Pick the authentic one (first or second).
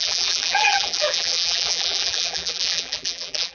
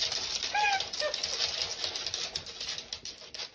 second